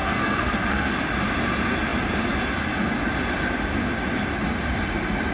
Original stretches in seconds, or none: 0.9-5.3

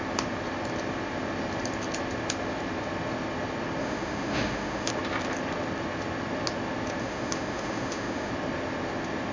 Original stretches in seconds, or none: 0.0-3.8; 4.9-7.0; 8.3-9.3